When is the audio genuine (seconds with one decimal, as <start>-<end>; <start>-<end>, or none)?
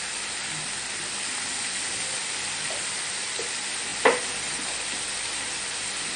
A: 0.0-1.5; 3.5-3.9; 5.6-6.2